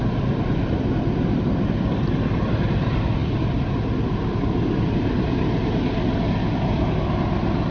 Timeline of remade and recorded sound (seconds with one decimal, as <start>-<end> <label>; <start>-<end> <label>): 0.0-7.7 recorded